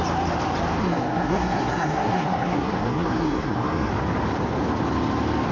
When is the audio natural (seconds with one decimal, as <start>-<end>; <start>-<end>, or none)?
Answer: 0.0-0.8; 3.9-5.5